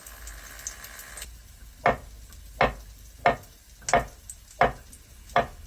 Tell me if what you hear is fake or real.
real